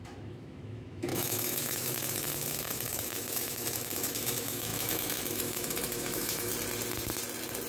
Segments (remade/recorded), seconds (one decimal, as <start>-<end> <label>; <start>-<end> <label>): 0.0-6.5 remade; 6.5-7.7 recorded